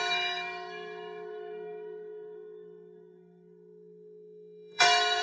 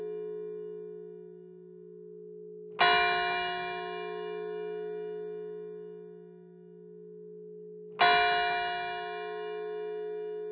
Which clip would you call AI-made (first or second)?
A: first